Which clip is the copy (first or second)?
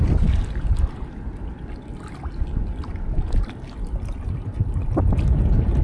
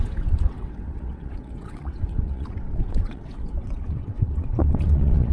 second